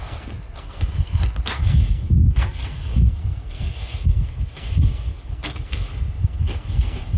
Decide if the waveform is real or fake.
fake